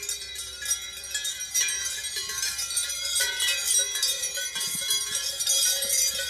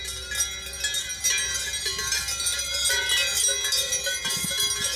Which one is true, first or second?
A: second